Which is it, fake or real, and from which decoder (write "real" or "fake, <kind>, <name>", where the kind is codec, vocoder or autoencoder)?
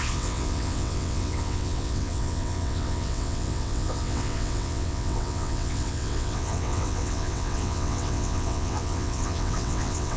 fake, vocoder, WaveNeXt